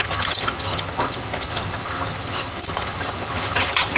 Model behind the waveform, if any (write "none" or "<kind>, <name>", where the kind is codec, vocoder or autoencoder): vocoder, HiFi-GAN